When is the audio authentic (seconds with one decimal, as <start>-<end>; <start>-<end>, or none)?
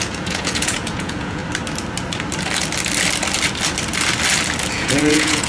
1.4-4.7